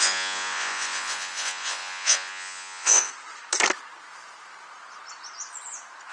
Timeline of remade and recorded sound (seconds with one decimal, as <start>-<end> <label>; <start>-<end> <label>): 0.0-3.1 remade; 3.1-6.1 recorded